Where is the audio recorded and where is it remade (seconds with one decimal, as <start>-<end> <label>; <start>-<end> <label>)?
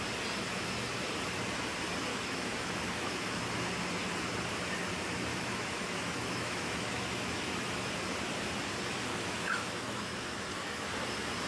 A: 0.0-2.1 recorded; 2.1-3.4 remade; 3.4-5.3 recorded; 5.3-7.9 remade; 7.9-9.1 recorded; 9.1-10.9 remade; 10.9-11.5 recorded